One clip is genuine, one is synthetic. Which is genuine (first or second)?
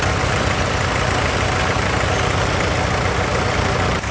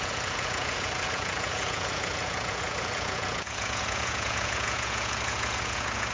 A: first